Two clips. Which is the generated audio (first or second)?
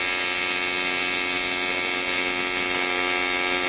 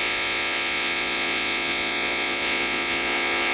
second